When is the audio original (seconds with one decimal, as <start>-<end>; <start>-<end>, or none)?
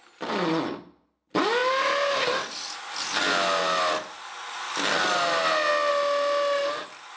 0.0-7.2